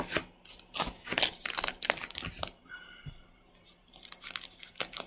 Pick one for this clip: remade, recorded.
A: recorded